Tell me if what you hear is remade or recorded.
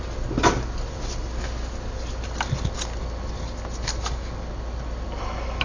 recorded